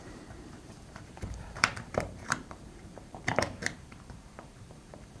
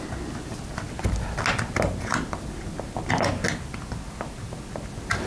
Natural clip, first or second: second